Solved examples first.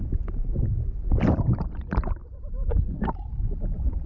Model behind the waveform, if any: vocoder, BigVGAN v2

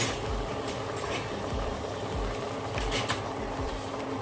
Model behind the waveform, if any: vocoder, BigVGAN v2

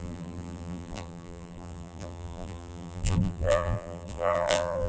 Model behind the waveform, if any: vocoder, BigVGAN v2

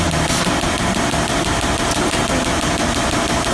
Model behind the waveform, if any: none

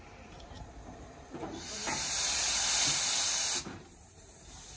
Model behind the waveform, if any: vocoder, BigVGAN v2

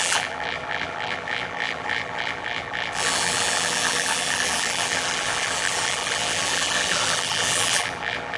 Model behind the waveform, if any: vocoder, BigVGAN v2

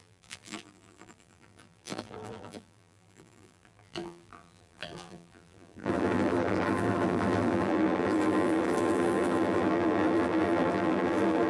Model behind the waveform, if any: vocoder, BigVGAN v2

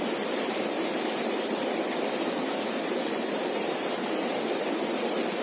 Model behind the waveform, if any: vocoder, BigVGAN v2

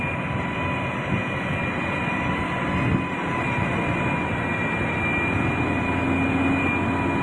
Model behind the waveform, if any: none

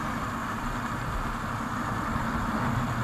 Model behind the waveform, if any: none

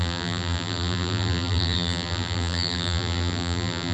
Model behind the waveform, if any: vocoder, BigVGAN v2